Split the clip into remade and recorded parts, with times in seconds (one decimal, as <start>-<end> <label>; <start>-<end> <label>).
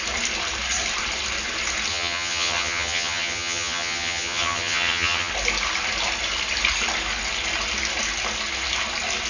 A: 0.0-1.9 recorded; 1.9-5.3 remade; 5.3-9.3 recorded